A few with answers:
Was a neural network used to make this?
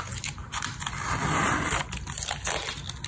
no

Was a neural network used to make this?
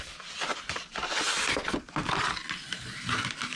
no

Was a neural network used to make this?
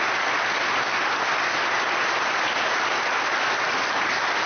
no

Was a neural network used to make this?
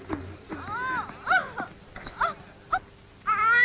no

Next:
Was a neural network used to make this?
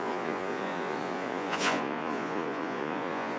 yes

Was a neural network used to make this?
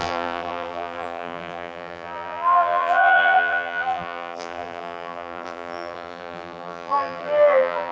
yes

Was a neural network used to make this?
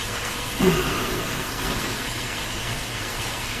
yes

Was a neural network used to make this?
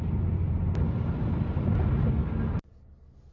no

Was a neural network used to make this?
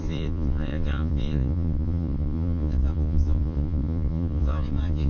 yes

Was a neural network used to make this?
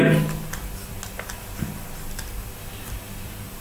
no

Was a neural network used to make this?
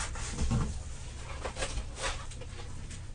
no